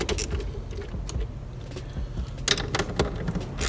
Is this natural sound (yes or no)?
yes